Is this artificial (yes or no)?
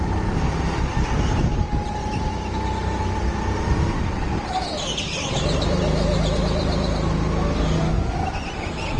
no